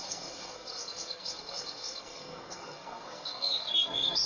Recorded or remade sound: remade